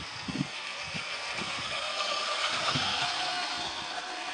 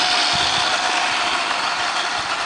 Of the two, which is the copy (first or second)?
first